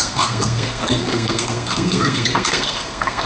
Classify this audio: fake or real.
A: fake